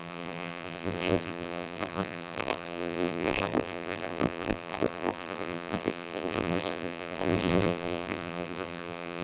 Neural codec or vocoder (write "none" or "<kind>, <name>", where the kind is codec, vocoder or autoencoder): vocoder, BigVGAN v2